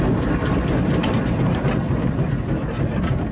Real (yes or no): yes